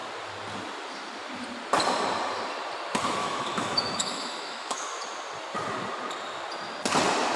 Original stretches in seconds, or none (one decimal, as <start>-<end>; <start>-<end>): 0.0-3.2; 4.9-7.4